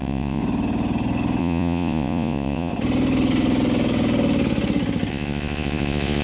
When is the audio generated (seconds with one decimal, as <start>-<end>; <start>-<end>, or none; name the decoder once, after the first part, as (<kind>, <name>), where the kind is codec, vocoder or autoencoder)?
0.0-0.4 (vocoder, Vocos); 1.4-2.7; 5.1-6.2